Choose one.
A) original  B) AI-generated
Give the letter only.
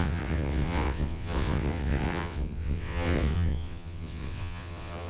B